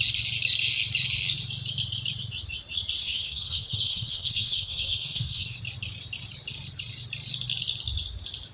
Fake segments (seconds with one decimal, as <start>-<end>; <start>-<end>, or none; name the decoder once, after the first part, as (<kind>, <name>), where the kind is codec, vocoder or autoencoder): 3.0-5.6 (codec, SNAC)